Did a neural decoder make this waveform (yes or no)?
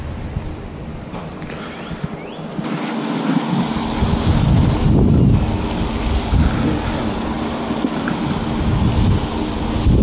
no